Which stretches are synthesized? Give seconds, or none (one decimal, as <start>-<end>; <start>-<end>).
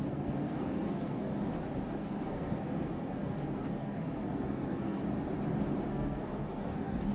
0.0-1.3; 1.9-5.0; 5.9-7.1